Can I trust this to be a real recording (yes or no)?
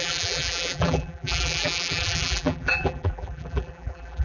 no